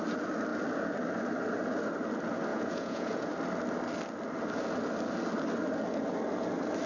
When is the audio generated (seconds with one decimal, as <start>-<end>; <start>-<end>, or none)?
2.5-3.3